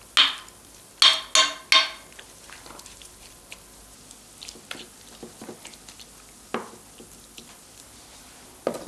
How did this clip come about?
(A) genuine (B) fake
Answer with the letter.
A